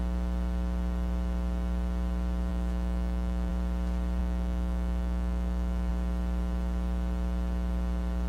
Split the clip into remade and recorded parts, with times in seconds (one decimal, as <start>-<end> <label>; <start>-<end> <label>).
0.0-2.5 recorded; 2.5-3.5 remade; 3.5-4.2 recorded; 4.2-5.9 remade; 5.9-8.3 recorded